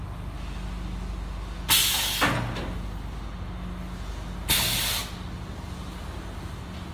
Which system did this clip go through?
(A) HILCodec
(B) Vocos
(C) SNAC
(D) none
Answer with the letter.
D